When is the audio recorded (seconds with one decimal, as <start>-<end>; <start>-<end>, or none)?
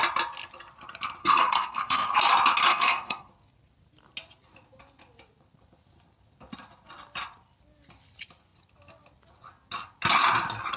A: 0.0-1.2; 2.1-2.7; 3.3-10.8